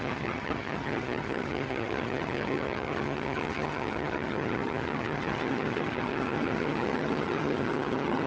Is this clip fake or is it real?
fake